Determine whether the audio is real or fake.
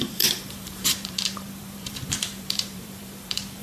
fake